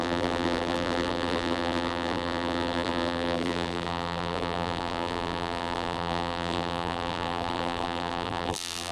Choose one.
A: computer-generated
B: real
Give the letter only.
A